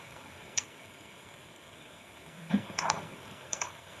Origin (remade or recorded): remade